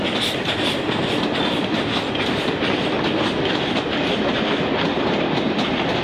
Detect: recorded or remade recorded